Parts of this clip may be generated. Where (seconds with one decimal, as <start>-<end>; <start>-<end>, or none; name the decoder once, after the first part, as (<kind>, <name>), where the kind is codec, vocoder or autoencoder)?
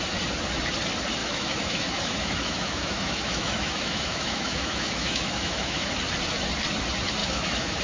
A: 1.2-5.9 (autoencoder, DAC-VAE); 7.2-7.8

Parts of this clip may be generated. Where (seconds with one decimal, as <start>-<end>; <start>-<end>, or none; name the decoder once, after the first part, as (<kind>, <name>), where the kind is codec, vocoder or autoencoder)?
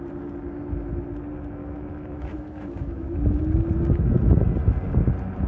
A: 1.6-3.4 (autoencoder, DAC-VAE)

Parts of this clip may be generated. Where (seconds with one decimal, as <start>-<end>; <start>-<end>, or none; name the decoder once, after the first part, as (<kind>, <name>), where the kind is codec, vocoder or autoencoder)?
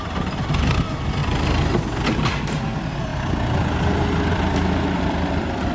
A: none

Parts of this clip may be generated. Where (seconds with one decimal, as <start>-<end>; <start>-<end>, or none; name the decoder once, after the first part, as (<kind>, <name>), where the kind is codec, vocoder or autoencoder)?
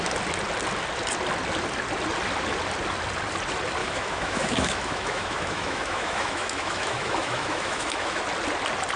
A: 3.8-8.2 (autoencoder, DAC-VAE)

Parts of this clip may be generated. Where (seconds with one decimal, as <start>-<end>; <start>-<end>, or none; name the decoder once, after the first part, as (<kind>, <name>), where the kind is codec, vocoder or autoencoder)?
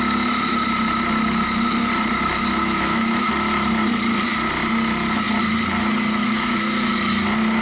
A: 2.6-3.3 (autoencoder, DAC-VAE); 6.2-6.9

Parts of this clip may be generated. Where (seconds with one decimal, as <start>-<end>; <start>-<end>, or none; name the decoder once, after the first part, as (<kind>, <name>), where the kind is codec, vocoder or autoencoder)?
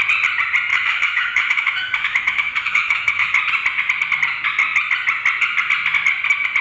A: 0.7-3.4 (autoencoder, DAC-VAE)